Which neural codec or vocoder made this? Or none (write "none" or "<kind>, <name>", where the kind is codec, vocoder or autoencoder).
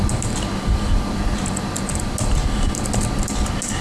none